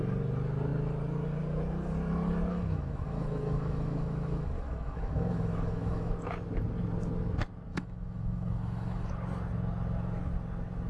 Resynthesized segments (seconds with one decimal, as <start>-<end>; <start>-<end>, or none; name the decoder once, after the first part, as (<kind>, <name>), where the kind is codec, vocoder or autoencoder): 2.5-6.1 (autoencoder, DAC-VAE); 7.7-9.1